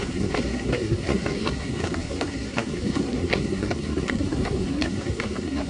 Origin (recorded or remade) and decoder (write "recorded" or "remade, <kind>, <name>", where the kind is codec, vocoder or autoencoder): remade, codec, SNAC